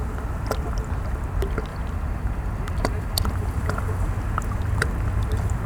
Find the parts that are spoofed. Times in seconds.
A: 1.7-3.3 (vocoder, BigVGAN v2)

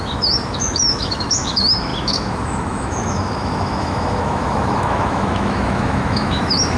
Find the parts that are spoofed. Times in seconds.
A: 0.0-6.8 (autoencoder, DAC-VAE)